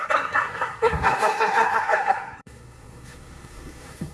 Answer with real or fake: fake